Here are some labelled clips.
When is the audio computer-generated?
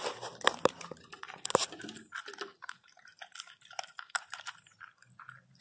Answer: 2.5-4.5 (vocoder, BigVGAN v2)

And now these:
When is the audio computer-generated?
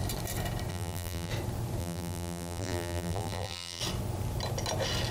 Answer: 0.7-1.3 (vocoder, BigVGAN v2); 1.8-3.8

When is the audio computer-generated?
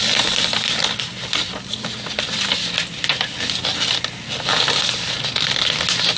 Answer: none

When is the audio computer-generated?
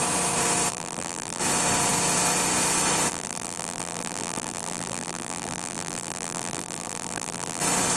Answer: 0.7-1.4 (vocoder, BigVGAN v2); 3.1-7.6